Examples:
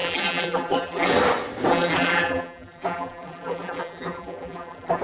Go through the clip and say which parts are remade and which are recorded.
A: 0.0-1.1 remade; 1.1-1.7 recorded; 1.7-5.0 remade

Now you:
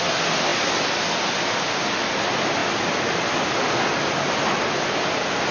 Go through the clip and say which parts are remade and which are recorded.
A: 0.0-5.5 recorded